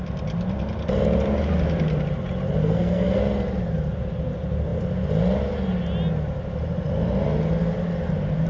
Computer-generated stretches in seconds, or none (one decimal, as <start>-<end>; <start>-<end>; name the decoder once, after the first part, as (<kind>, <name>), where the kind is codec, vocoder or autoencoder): 2.6-3.2 (codec, SNAC)